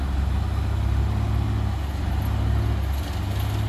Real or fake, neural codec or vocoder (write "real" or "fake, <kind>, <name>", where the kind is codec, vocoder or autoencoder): real